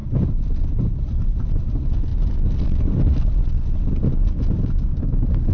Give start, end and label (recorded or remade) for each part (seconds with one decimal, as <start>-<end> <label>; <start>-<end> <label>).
0.0-4.9 recorded; 4.9-5.5 remade